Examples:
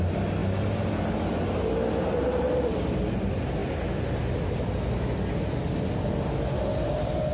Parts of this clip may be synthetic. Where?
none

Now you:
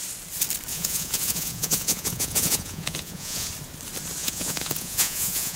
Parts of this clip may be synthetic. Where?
0.7-3.5 (vocoder, Vocos); 4.2-5.6